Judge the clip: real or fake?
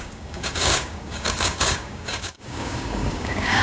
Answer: fake